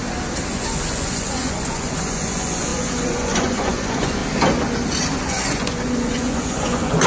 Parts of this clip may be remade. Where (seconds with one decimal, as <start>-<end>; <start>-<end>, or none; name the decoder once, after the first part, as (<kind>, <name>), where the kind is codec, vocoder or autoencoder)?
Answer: 0.5-4.2 (vocoder, Vocos); 5.2-7.1